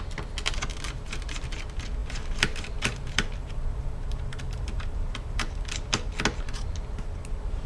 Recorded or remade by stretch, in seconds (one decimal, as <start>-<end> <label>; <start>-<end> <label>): 0.0-2.0 recorded; 2.0-5.5 remade; 5.5-7.7 recorded